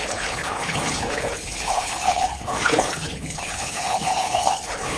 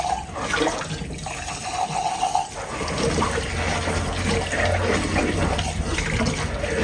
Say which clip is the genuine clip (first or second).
second